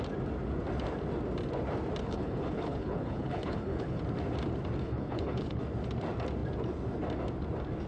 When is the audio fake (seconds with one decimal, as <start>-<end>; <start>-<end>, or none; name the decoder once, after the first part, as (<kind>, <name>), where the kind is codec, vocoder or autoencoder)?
2.0-4.0 (codec, HILCodec); 4.8-5.6